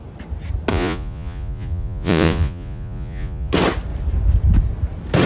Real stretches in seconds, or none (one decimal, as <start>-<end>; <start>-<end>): 0.0-0.7; 3.5-5.3